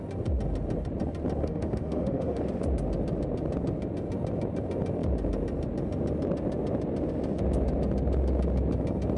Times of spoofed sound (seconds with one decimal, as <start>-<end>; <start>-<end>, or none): 1.4-2.4